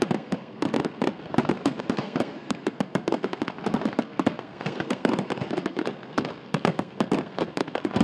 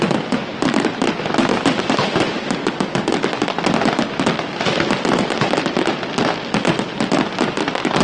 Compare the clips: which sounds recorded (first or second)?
second